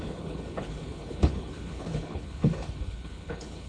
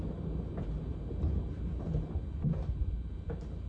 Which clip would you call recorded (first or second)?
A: second